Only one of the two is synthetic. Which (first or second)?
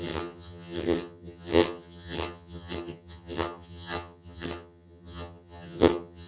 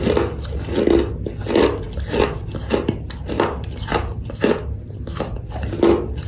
first